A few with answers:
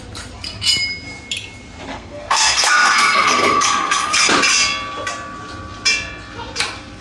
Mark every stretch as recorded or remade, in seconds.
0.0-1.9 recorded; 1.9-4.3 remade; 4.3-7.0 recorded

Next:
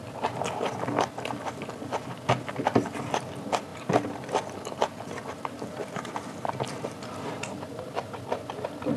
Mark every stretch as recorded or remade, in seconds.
0.0-9.0 recorded

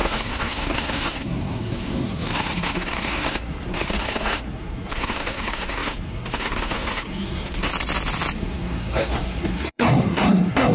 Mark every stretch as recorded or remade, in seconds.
0.0-7.7 remade; 7.7-8.4 recorded; 8.4-10.7 remade

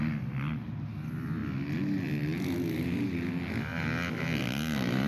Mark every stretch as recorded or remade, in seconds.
0.0-5.1 recorded

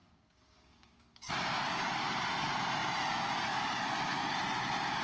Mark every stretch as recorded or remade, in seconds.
0.0-1.3 remade; 1.3-5.0 recorded

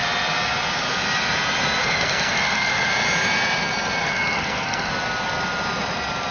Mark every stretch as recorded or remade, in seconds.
0.0-1.8 recorded; 1.8-2.9 remade; 2.9-4.0 recorded; 4.0-4.9 remade; 4.9-6.3 recorded

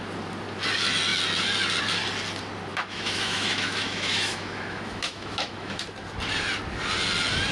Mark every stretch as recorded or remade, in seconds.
0.0-2.7 recorded; 2.7-5.8 remade; 5.8-7.5 recorded

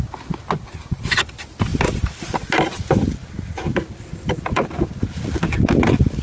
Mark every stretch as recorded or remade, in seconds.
0.0-6.2 recorded